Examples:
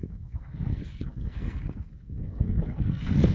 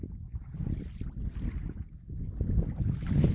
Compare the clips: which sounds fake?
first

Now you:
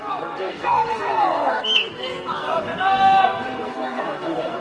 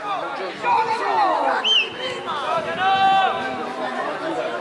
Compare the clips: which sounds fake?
first